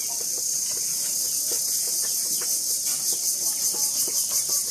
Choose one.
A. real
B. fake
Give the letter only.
A